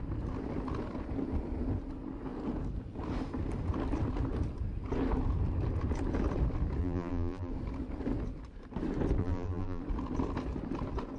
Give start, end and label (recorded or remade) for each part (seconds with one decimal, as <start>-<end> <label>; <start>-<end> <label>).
0.0-6.8 recorded; 6.8-7.5 remade; 7.5-9.2 recorded; 9.2-9.8 remade; 9.8-11.2 recorded